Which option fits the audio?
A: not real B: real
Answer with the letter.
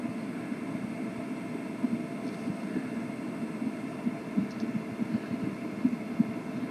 B